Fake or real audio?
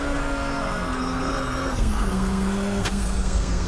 fake